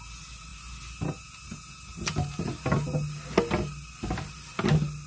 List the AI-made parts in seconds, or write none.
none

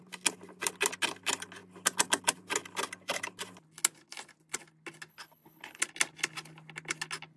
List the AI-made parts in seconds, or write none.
5.1-5.8 (codec, HILCodec)

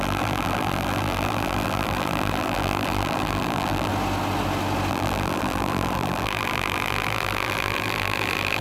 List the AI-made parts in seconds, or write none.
0.0-3.9 (vocoder, BigVGAN v2); 4.9-8.6

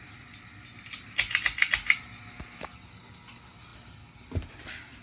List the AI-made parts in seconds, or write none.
none

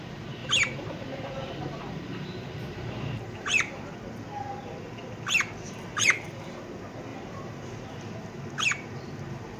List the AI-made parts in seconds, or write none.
0.4-3.9 (vocoder, BigVGAN v2); 5.9-6.6; 7.1-7.7